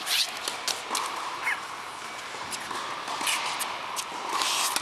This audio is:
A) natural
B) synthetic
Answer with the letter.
A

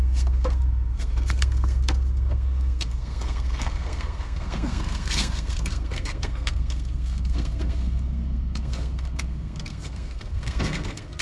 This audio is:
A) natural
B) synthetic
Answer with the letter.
B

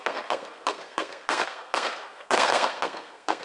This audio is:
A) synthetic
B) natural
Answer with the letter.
A